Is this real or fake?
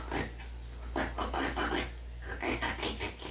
real